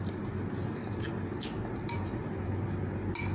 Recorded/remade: recorded